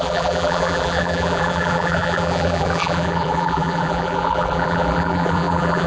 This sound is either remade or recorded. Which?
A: remade